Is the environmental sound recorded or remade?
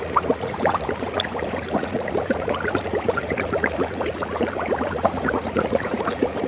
remade